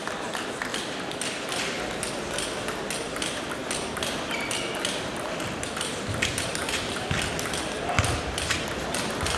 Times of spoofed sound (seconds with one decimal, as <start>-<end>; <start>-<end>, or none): 0.7-1.5; 3.6-7.3